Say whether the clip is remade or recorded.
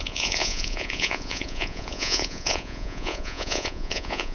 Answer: remade